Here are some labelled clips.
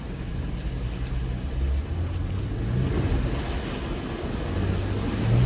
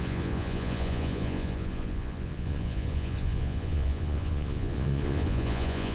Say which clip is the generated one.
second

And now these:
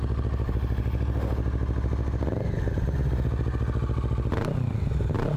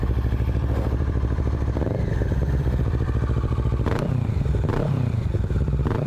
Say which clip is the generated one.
second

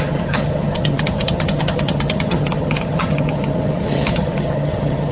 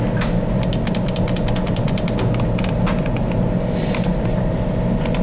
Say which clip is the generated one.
first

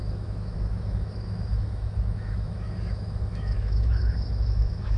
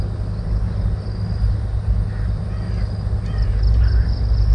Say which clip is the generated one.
first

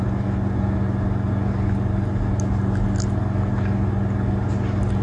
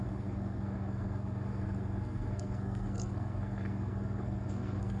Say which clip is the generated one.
second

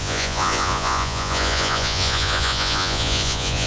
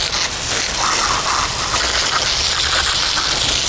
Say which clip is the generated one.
first